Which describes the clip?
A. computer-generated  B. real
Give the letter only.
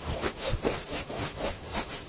A